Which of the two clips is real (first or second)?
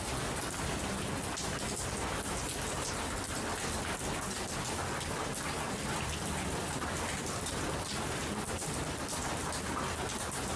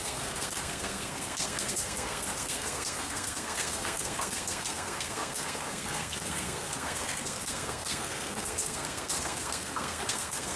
first